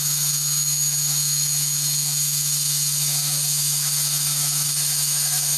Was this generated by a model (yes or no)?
yes